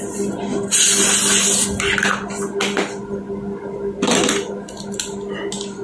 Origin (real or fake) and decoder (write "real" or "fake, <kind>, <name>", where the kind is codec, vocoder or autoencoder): real